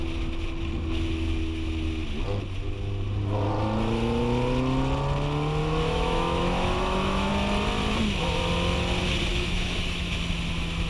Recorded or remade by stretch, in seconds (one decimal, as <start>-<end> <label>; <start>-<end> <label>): 0.0-5.6 recorded; 5.6-7.3 remade; 7.3-9.3 recorded; 9.3-10.2 remade; 10.2-10.9 recorded